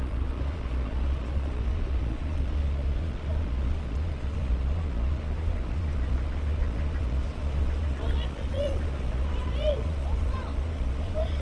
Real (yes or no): no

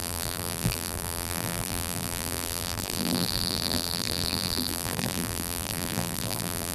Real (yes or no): no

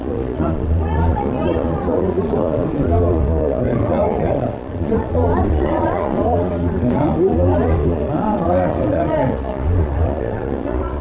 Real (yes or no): no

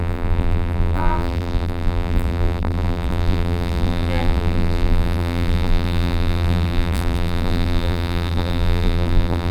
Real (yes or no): no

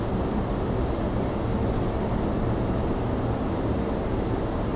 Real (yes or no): yes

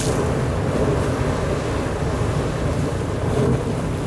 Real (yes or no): yes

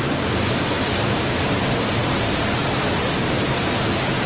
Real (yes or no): yes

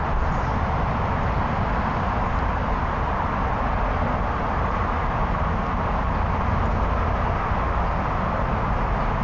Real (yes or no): yes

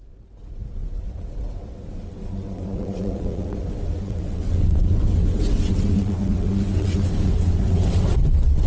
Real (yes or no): no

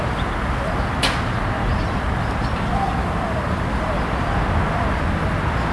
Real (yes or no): yes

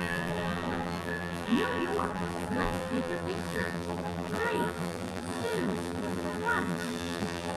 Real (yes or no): no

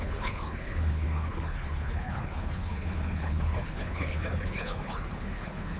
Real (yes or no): no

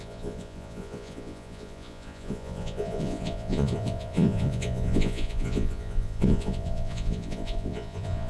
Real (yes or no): no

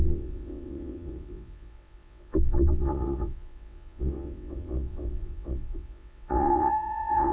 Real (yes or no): no